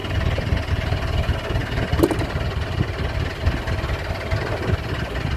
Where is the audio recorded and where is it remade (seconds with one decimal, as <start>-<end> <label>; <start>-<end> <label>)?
0.0-5.4 recorded